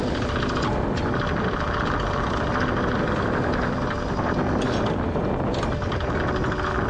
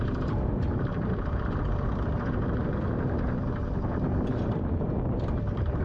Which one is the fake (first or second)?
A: second